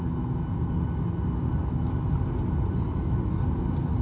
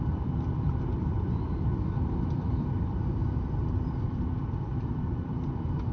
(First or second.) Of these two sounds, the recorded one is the first